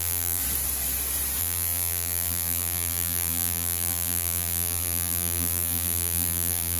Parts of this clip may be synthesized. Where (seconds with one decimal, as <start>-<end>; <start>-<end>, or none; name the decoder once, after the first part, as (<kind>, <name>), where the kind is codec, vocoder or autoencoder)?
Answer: 0.0-0.4 (vocoder, BigVGAN v2); 1.4-6.8